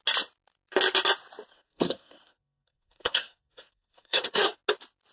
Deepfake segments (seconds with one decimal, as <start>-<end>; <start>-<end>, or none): 1.5-4.6